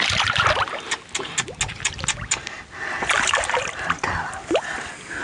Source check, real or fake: real